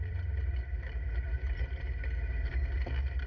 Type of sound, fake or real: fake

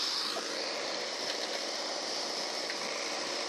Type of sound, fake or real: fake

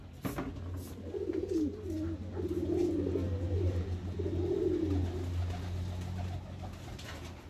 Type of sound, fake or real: real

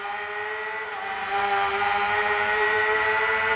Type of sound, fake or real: fake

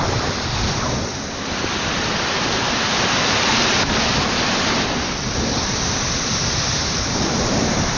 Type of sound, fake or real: fake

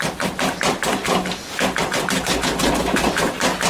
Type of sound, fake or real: real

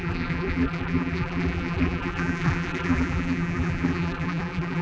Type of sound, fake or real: fake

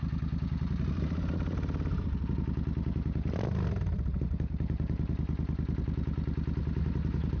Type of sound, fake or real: real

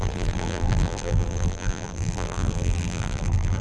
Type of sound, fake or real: fake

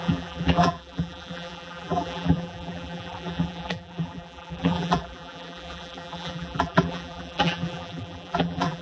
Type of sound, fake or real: fake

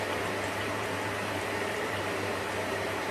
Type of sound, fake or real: fake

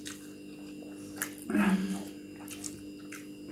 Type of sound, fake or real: real